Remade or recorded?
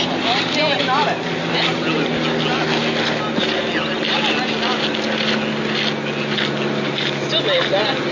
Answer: recorded